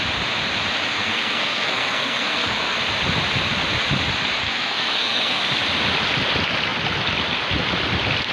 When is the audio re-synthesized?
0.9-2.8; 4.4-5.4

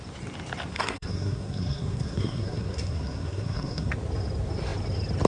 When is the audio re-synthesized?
0.7-3.9

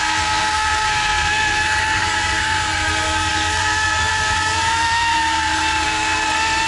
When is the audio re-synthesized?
0.0-6.7